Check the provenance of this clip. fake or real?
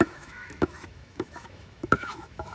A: fake